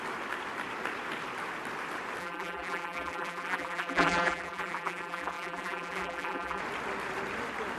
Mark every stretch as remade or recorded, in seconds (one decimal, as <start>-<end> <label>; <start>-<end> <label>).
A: 0.0-2.2 recorded; 2.2-6.6 remade; 6.6-7.8 recorded